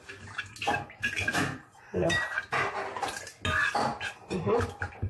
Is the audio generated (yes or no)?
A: no